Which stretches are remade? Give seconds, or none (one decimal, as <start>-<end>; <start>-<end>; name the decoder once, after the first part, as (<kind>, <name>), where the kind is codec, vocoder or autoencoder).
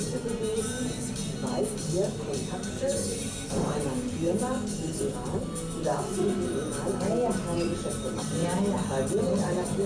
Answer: none